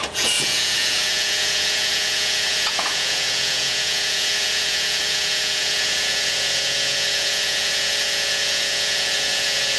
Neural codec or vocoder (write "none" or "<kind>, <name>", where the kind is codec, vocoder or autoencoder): vocoder, Vocos